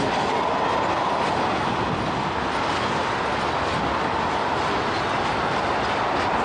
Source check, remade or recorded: recorded